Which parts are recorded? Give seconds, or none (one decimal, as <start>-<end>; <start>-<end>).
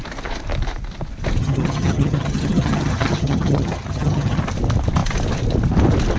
0.0-1.4; 4.4-6.2